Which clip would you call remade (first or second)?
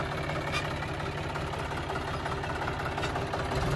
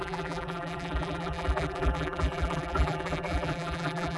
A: second